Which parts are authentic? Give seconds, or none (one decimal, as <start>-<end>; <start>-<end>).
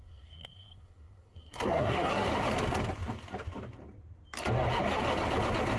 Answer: 2.3-5.8